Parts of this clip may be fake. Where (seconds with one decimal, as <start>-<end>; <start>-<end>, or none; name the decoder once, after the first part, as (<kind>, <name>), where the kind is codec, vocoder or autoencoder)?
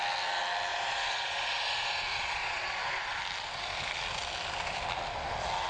0.7-3.2 (vocoder, Vocos)